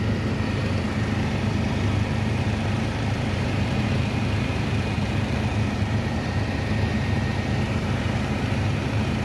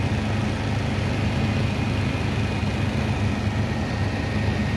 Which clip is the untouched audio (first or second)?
second